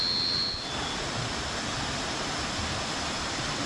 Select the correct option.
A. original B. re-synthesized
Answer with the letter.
A